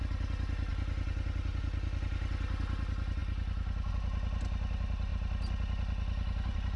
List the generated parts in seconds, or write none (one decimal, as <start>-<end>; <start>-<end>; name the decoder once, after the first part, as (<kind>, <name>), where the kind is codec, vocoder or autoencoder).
none